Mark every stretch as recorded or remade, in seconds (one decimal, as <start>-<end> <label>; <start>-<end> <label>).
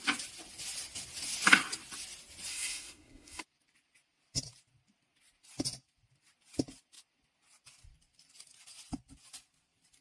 0.0-2.5 recorded; 2.5-3.4 remade; 3.4-10.0 recorded